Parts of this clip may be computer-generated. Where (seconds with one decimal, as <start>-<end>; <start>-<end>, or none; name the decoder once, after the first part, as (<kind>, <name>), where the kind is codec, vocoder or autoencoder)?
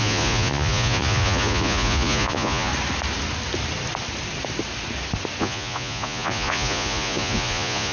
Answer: 0.0-2.7 (vocoder, Vocos); 5.4-7.9